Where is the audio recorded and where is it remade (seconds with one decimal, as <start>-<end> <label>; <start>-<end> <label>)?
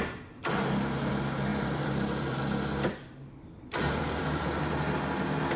0.0-1.5 recorded; 1.5-2.4 remade; 2.4-2.9 recorded; 2.9-4.6 remade; 4.6-5.6 recorded